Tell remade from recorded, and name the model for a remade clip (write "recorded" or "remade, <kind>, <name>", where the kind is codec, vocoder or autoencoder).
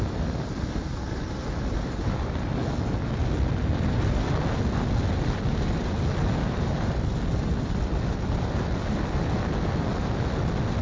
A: recorded